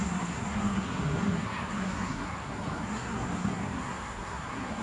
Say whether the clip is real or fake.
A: fake